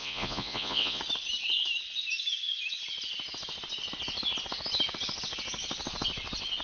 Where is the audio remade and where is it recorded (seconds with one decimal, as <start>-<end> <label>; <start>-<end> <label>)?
0.0-1.0 remade; 1.0-6.6 recorded